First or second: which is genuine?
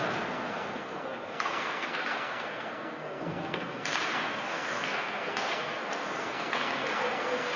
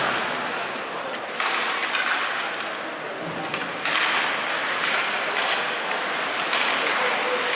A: second